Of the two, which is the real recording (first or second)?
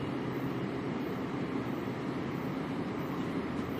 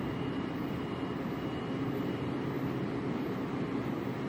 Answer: second